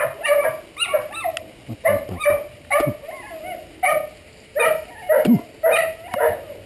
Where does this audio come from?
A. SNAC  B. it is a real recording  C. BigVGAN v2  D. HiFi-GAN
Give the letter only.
B